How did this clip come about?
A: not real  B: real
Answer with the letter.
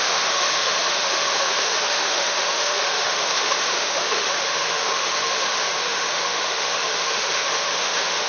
A